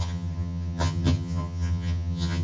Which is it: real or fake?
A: fake